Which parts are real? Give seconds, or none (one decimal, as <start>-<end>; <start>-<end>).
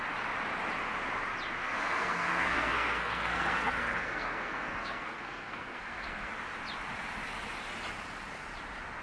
0.0-1.6; 6.3-9.0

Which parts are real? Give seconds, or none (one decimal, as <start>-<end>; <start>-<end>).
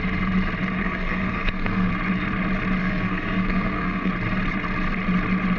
0.0-0.8; 1.9-2.8; 4.1-5.6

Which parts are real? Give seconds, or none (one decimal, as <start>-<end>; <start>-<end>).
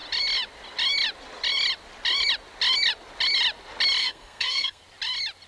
0.0-4.0; 4.8-5.5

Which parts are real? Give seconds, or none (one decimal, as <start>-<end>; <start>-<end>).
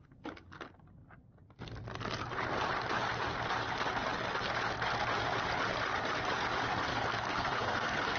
0.0-6.9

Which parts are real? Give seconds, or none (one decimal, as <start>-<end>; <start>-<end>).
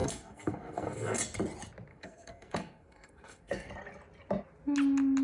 1.2-1.9; 3.7-5.2